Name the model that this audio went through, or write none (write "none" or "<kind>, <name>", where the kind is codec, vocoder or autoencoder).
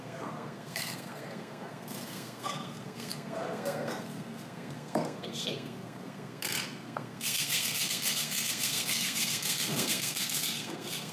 codec, SNAC